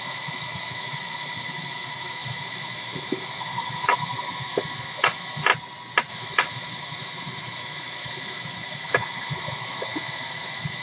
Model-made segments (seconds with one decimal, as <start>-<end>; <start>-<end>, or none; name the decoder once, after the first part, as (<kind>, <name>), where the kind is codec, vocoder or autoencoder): 0.0-5.5 (autoencoder, DAC-VAE); 6.1-10.8